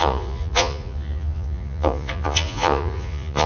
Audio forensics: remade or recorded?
remade